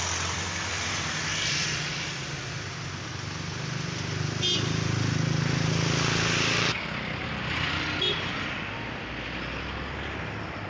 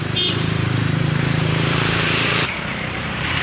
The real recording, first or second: first